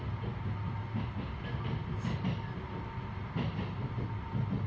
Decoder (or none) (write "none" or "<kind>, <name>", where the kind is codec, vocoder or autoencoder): none